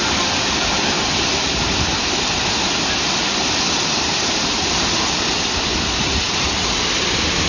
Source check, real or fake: real